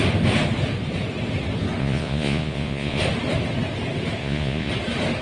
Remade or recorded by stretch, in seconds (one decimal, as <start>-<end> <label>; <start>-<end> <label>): 0.0-1.8 recorded; 1.8-3.0 remade; 3.0-4.2 recorded; 4.2-4.7 remade; 4.7-5.2 recorded